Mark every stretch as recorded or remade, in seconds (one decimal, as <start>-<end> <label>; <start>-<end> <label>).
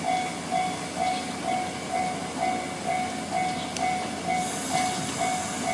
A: 0.0-5.7 recorded